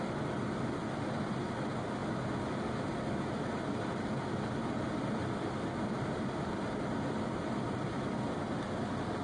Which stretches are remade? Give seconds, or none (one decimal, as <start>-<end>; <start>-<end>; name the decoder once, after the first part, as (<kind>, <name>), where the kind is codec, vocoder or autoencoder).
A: none